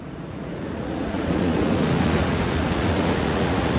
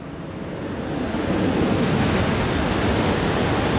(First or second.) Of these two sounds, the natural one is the second